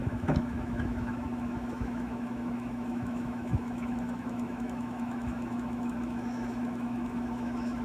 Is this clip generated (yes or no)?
yes